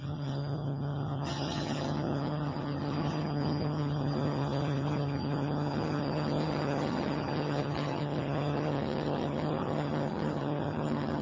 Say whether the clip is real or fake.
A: fake